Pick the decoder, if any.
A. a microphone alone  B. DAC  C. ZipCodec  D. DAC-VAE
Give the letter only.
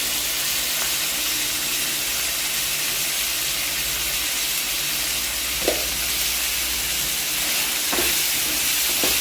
A